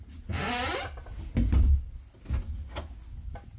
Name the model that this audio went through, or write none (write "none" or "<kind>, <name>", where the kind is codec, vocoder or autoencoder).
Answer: none